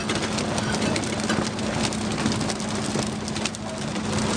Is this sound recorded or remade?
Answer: recorded